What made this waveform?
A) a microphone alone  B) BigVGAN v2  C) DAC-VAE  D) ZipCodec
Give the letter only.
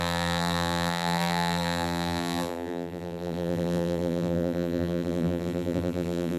B